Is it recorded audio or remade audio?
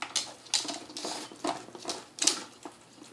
recorded